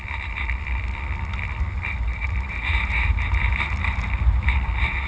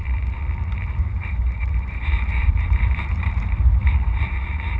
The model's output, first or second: second